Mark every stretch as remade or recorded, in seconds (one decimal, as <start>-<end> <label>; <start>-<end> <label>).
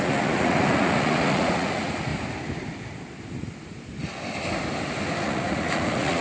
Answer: 0.0-2.1 remade; 2.1-5.2 recorded; 5.2-6.2 remade